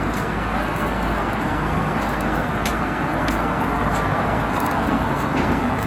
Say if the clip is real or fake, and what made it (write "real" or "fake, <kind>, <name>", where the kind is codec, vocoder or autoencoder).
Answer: fake, codec, SNAC